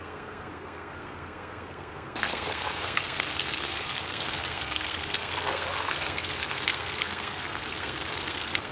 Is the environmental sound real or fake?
fake